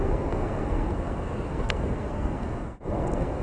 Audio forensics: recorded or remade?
remade